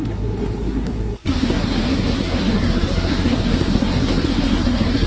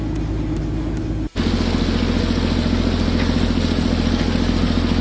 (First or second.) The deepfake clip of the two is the first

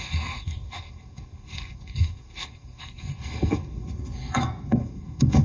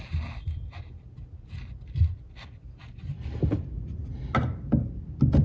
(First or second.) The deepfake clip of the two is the first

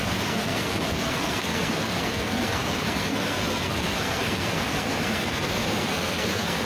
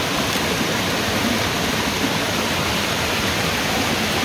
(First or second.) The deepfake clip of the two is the first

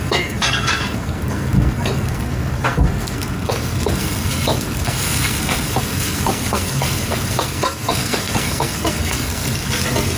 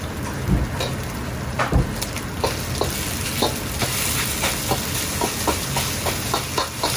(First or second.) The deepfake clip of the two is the first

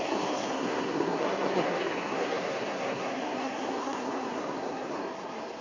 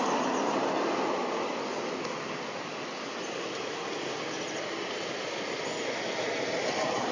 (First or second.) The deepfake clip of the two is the first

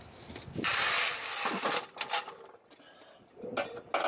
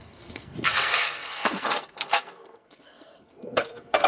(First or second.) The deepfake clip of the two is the second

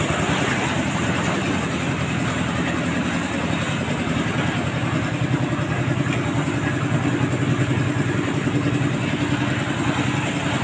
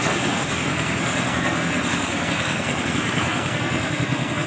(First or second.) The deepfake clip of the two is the second